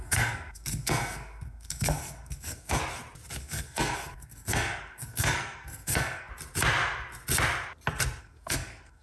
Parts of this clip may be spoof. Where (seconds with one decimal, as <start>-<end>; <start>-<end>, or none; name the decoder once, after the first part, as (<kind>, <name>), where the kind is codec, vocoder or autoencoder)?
0.0-2.8 (codec, SNAC); 3.4-6.3; 8.2-9.0